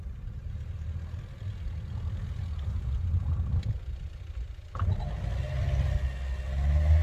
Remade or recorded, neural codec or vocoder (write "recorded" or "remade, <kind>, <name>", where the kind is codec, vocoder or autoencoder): recorded